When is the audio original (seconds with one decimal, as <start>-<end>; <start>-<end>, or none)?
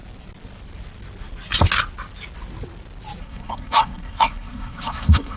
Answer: 0.0-3.2